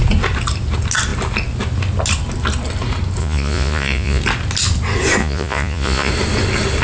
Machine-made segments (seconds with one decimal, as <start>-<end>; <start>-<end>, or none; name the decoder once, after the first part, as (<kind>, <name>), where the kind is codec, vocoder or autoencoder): 3.2-4.2 (vocoder, Vocos); 5.2-6.1